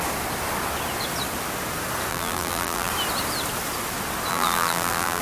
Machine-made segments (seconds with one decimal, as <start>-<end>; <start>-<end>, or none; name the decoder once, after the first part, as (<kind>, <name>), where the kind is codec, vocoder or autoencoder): 2.1-2.9 (vocoder, BigVGAN v2); 4.3-5.2